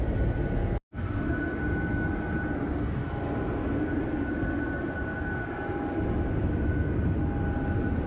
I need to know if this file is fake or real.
real